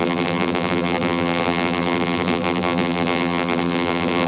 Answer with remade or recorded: remade